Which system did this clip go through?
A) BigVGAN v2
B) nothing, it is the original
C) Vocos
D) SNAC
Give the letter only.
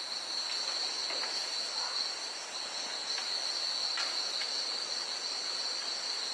B